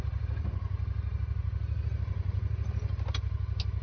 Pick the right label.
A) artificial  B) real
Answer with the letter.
B